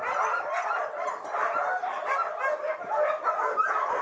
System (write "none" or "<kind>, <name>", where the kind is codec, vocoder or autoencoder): none